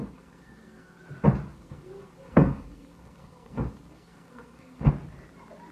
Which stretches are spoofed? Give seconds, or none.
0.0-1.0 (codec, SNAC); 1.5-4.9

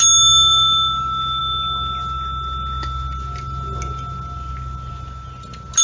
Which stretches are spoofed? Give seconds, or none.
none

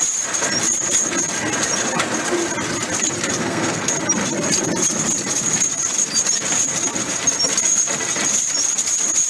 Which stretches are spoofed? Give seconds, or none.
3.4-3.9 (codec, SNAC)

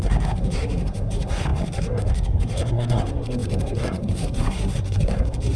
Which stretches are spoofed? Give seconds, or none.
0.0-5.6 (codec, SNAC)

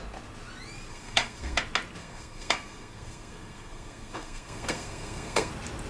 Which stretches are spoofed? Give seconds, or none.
0.9-1.6 (codec, SNAC); 2.0-5.5

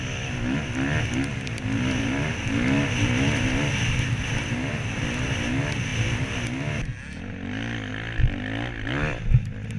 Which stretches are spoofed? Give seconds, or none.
none

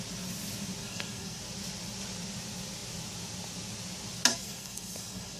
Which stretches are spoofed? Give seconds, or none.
0.8-1.4 (codec, SNAC); 4.3-5.4

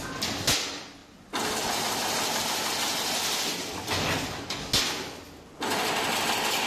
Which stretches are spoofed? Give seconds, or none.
none